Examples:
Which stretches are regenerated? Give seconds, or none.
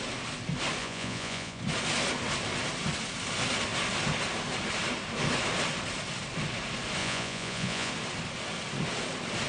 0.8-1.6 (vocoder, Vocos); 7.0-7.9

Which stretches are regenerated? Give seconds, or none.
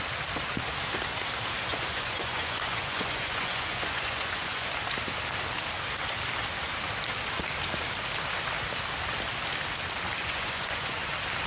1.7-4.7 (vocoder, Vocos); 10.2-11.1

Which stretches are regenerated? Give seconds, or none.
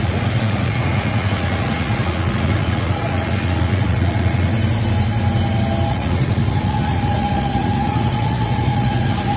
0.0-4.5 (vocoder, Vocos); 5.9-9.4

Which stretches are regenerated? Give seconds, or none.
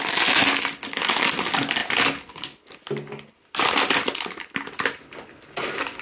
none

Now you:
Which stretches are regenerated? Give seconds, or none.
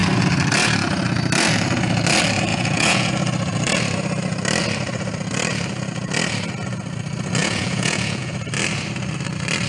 2.5-3.1 (vocoder, Vocos); 7.4-8.3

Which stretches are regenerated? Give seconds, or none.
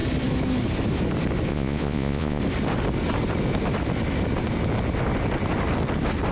1.5-2.4 (vocoder, Vocos)